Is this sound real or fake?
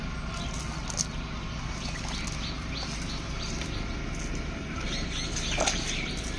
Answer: real